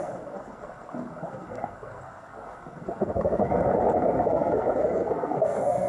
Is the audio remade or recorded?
remade